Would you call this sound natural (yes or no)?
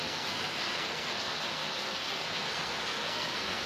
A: no